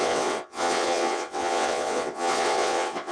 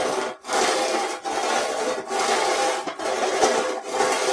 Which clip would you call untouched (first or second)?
second